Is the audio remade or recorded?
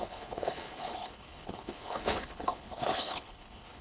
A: remade